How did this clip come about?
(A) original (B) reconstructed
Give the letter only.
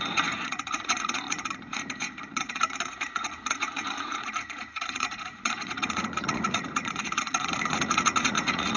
B